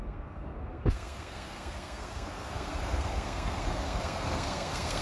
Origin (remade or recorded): remade